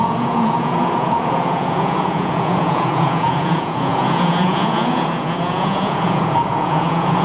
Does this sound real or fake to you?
fake